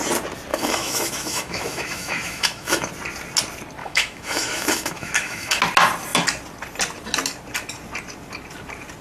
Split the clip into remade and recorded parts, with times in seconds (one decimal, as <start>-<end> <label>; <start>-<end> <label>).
0.0-0.5 recorded; 0.5-2.9 remade; 2.9-3.8 recorded; 3.8-5.6 remade; 5.6-9.0 recorded